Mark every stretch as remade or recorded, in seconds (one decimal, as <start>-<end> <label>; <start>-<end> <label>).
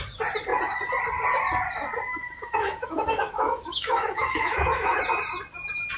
0.0-2.1 recorded; 2.1-5.0 remade; 5.0-6.0 recorded